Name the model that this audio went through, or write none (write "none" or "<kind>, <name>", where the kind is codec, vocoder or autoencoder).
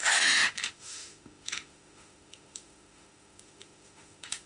autoencoder, DAC-VAE